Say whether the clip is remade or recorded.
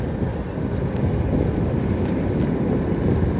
recorded